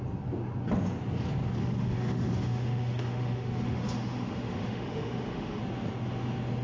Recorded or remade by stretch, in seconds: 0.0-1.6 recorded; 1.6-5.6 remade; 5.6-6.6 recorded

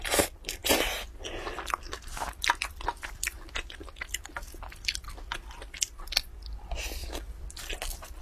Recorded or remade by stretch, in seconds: 0.0-7.0 recorded; 7.0-7.6 remade; 7.6-8.2 recorded